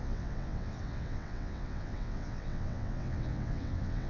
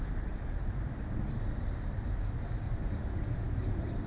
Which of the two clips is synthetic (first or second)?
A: first